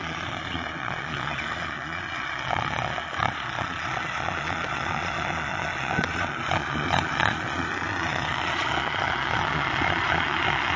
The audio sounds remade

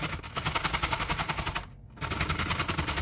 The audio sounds recorded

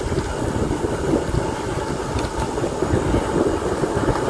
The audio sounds recorded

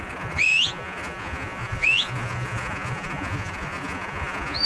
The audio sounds remade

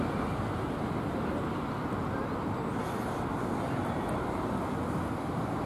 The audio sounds recorded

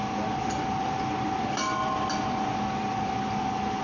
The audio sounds recorded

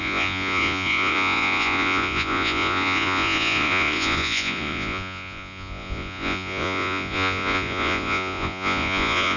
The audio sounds remade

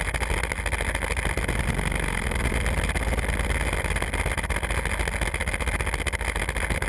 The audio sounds recorded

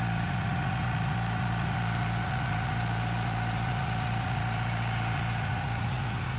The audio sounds remade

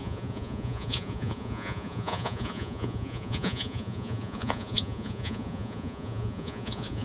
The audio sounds remade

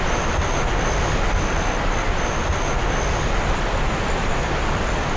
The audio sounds recorded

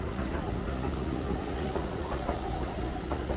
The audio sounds remade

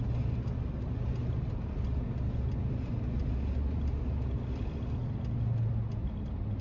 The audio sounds recorded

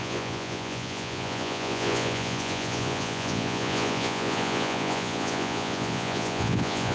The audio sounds remade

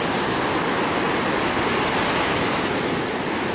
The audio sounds recorded